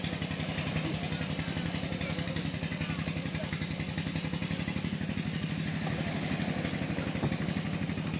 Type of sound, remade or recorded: recorded